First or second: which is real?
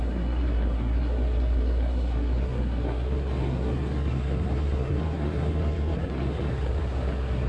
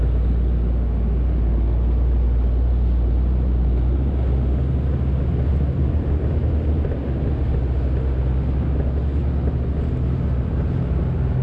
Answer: second